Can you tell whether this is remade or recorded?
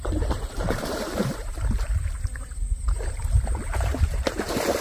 remade